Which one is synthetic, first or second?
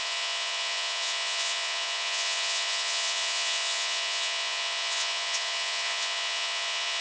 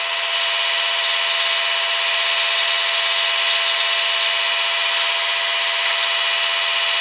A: first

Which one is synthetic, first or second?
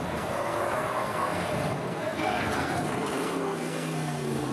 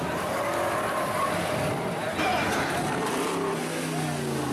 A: first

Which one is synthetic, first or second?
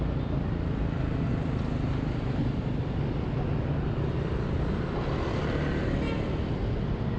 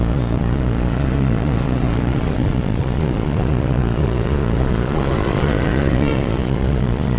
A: second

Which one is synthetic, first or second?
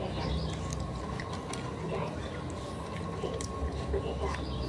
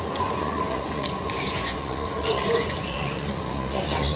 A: second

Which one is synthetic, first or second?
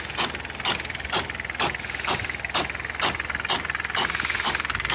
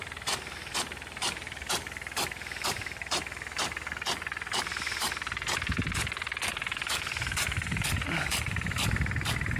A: second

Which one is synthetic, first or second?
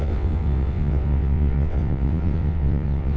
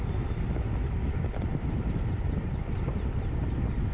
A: first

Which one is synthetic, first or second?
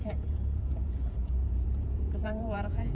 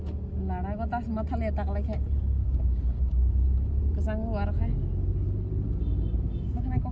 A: first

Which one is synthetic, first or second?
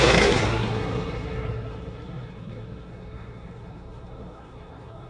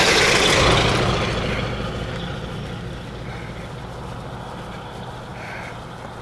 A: first